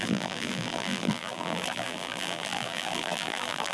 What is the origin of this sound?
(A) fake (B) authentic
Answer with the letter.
A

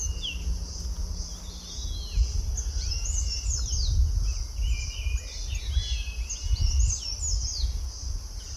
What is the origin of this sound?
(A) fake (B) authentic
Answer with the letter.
B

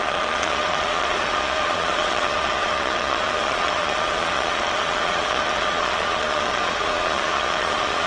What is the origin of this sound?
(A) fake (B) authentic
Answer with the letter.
A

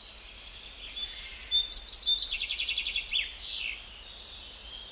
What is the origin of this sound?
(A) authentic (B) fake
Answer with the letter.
A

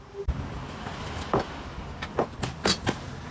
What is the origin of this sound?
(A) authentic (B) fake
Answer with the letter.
A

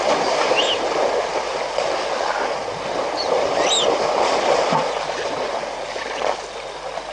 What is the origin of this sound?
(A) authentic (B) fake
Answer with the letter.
A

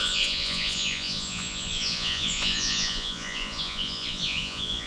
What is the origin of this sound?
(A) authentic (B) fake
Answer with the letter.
B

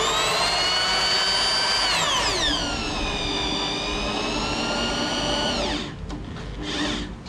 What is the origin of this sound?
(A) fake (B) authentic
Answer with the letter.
B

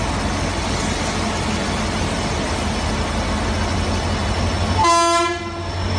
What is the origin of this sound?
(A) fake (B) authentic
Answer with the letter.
B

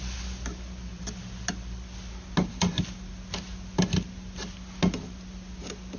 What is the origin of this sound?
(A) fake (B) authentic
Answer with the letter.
B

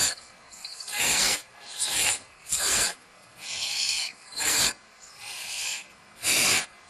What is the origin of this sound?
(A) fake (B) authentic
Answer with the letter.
A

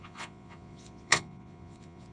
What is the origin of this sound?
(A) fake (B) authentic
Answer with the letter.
A